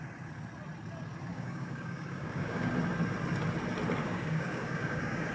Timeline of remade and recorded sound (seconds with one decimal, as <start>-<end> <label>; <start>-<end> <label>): 0.0-1.3 recorded; 1.3-2.7 remade; 2.7-4.0 recorded; 4.0-5.3 remade